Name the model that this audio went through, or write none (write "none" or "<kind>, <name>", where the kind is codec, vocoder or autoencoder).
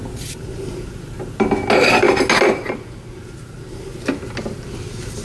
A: none